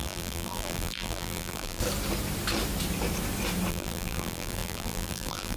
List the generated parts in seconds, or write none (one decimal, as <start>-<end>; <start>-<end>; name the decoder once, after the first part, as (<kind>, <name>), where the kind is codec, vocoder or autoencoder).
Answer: 0.0-1.8 (vocoder, BigVGAN v2); 3.7-5.6